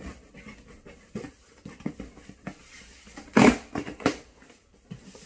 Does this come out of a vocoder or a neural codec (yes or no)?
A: no